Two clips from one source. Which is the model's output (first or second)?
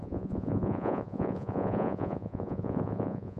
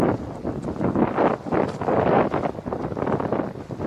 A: first